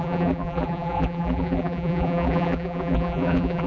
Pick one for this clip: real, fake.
fake